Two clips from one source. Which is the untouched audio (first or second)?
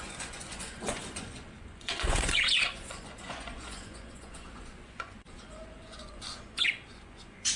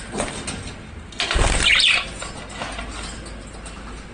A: second